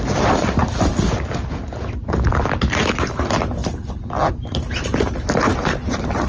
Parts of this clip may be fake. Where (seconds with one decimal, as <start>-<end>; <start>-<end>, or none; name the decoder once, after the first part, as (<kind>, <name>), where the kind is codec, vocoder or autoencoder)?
0.0-0.6 (vocoder, BigVGAN v2); 2.8-3.6; 4.3-6.3